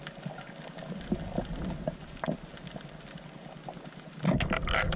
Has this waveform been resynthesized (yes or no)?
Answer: no